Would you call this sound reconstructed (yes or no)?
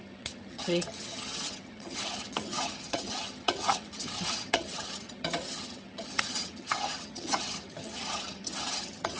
yes